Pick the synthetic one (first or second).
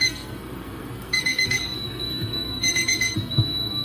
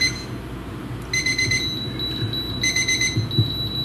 first